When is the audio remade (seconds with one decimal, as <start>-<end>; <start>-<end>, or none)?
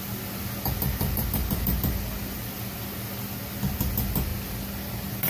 none